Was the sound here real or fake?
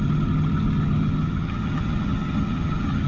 fake